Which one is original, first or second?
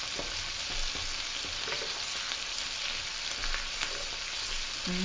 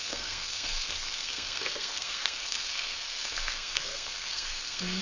first